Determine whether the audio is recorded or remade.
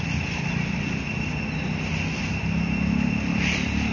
recorded